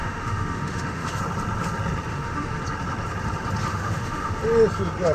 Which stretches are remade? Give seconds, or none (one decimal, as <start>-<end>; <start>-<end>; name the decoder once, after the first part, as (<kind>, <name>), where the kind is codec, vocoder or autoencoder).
0.0-1.2 (autoencoder, DAC-VAE); 2.1-2.6; 3.7-4.4